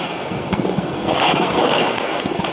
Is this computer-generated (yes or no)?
yes